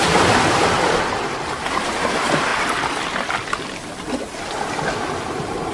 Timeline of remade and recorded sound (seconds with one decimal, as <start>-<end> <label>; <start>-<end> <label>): 0.0-2.5 remade; 2.5-5.2 recorded; 5.2-5.7 remade